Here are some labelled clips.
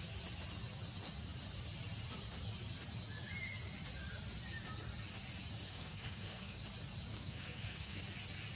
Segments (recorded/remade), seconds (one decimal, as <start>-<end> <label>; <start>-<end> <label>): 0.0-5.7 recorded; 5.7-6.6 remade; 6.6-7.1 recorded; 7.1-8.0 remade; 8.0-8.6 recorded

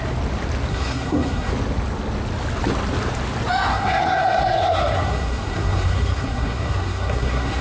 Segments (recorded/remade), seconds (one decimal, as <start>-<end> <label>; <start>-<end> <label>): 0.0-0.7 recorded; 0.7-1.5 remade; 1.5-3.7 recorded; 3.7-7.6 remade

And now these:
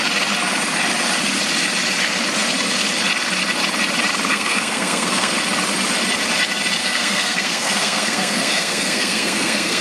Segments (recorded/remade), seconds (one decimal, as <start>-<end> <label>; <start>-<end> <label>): 0.0-4.3 recorded; 4.3-5.3 remade; 5.3-6.8 recorded; 6.8-9.8 remade

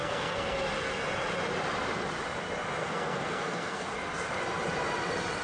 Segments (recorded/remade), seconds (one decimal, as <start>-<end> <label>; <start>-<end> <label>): 0.0-0.6 remade; 0.6-2.8 recorded; 2.8-3.9 remade; 3.9-5.4 recorded